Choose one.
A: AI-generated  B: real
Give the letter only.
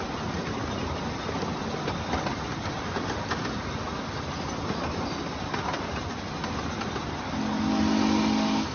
B